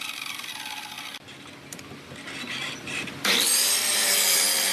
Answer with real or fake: fake